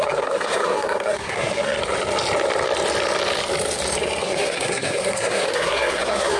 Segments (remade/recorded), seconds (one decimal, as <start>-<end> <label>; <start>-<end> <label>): 0.0-1.8 remade; 1.8-4.2 recorded; 4.2-6.4 remade